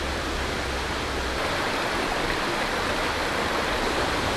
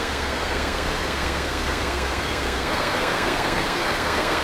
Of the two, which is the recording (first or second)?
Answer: first